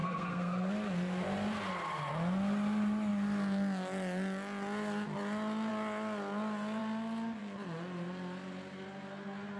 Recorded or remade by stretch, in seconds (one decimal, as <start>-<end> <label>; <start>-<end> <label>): 0.0-0.7 remade; 0.7-9.6 recorded